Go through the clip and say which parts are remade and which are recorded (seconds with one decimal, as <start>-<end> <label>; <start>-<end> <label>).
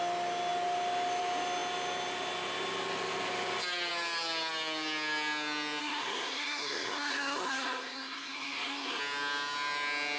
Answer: 0.0-5.8 recorded; 5.8-9.0 remade; 9.0-10.2 recorded